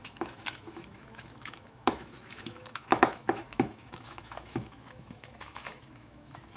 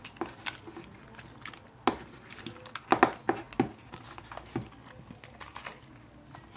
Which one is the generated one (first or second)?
first